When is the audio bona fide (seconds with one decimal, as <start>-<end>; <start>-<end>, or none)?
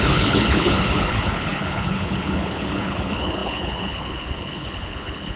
none